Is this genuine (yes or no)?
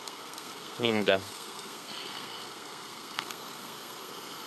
no